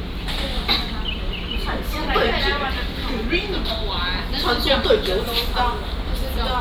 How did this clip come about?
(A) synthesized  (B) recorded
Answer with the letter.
B